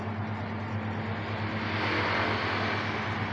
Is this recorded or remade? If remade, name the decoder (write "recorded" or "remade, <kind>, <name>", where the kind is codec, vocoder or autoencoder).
recorded